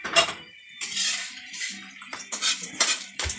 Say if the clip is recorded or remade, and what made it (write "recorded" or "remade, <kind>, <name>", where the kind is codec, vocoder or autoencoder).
remade, vocoder, BigVGAN v2